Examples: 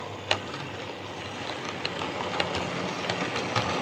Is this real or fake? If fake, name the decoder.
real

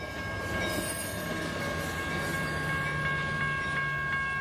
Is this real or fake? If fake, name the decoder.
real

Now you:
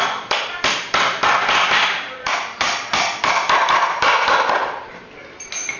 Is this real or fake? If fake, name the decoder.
fake, vocoder, BigVGAN v2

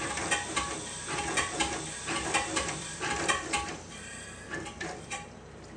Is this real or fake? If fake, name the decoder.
fake, vocoder, BigVGAN v2